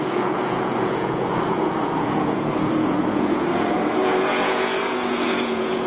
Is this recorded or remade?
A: remade